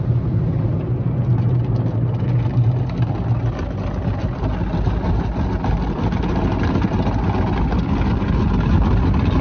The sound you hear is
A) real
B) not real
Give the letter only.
A